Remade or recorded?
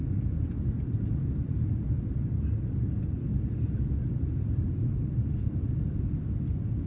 remade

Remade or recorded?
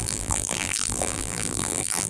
remade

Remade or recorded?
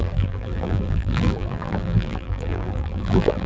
remade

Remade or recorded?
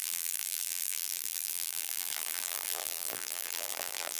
remade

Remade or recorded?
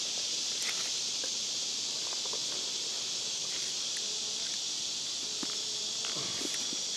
recorded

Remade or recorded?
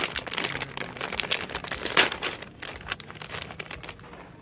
recorded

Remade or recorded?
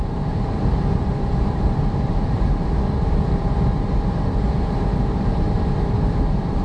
remade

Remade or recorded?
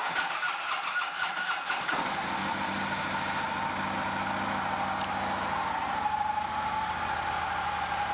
recorded